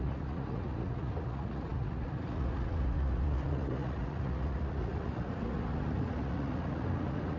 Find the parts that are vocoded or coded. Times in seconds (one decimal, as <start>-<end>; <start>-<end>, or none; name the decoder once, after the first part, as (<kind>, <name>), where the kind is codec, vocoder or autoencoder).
0.0-7.4 (vocoder, Vocos)

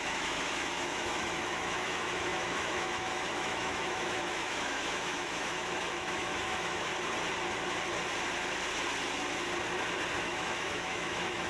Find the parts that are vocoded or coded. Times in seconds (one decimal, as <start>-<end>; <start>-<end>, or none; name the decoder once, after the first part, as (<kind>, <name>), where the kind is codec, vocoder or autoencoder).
0.0-6.9 (autoencoder, DAC-VAE); 10.2-11.5

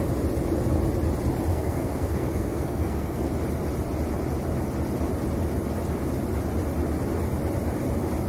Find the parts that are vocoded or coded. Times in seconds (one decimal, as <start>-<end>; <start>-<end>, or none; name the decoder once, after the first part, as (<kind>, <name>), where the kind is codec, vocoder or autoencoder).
1.5-3.3 (codec, SNAC)

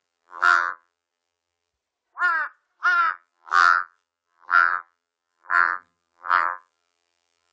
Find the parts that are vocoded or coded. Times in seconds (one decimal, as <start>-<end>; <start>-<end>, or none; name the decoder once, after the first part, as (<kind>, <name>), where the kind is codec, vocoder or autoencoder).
0.0-1.7 (vocoder, BigVGAN v2); 3.0-7.5